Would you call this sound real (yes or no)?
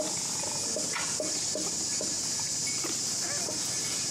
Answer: yes